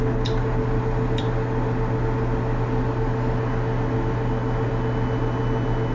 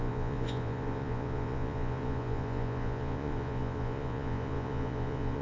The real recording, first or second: first